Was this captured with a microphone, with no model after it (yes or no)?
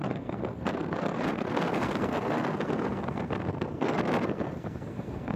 no